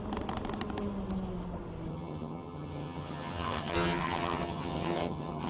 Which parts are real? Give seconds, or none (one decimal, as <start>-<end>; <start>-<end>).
0.0-1.9